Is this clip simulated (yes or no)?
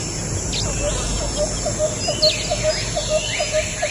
no